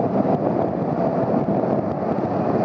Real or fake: real